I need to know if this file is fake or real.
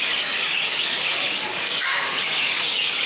fake